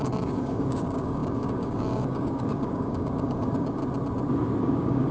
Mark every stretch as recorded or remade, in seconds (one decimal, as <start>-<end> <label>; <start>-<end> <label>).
0.0-3.8 remade; 3.8-4.6 recorded; 4.6-5.1 remade